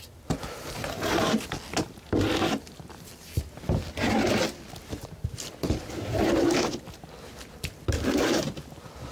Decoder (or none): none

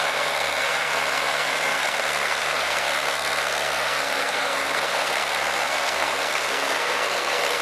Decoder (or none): codec, SNAC